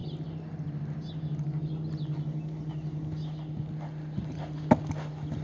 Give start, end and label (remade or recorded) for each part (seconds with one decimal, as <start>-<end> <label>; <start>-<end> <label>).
0.0-5.4 recorded